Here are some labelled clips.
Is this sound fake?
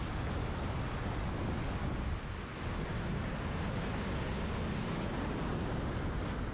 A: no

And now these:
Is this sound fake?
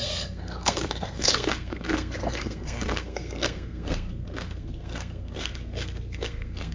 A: yes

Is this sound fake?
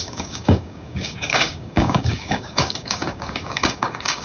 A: yes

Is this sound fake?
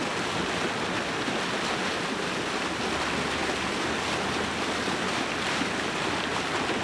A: no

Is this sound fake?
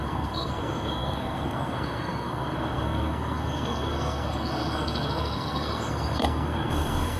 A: yes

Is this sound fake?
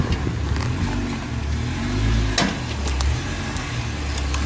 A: no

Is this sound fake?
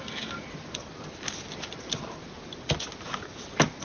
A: no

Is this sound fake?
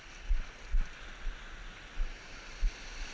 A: no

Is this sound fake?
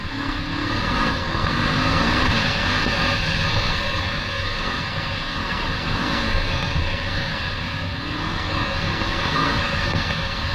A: yes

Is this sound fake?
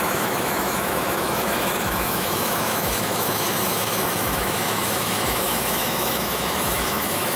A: yes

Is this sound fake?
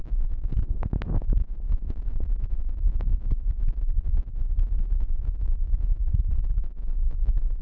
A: yes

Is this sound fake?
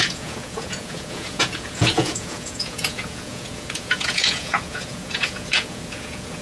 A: yes